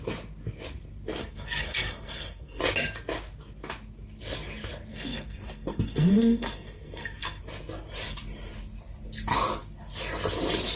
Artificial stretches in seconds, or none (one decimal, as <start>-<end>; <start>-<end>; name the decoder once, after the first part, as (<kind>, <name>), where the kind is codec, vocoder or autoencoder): 1.2-2.6 (codec, SNAC); 4.9-7.4